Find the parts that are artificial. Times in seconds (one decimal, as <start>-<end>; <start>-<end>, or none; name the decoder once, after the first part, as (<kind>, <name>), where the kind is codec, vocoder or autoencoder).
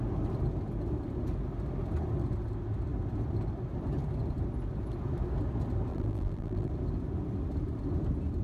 5.9-6.7 (vocoder, BigVGAN v2)